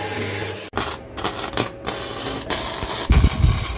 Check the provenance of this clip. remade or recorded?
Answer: recorded